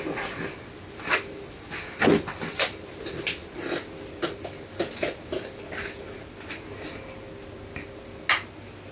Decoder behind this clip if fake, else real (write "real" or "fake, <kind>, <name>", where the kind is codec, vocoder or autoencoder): real